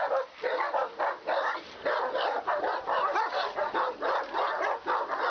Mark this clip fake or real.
real